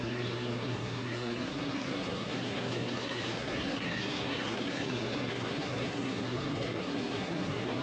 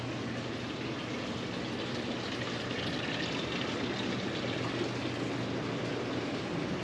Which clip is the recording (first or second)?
second